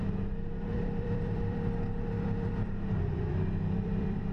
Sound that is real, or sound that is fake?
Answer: fake